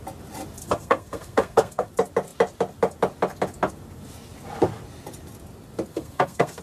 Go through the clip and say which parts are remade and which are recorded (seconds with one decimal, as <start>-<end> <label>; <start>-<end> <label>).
0.0-0.6 recorded; 0.6-1.9 remade; 1.9-5.9 recorded; 5.9-6.6 remade